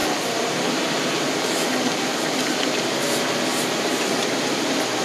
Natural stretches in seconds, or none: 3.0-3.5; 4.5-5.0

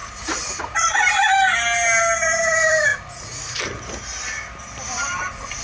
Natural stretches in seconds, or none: 0.6-2.9; 3.6-5.6

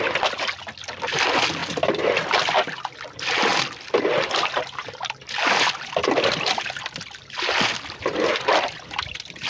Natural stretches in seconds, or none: 0.0-9.5

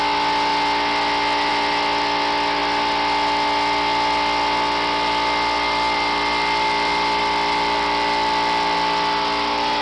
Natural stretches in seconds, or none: 0.0-9.8

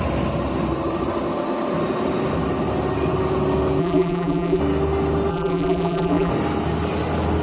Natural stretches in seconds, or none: 0.0-3.8; 4.6-5.3; 6.3-7.4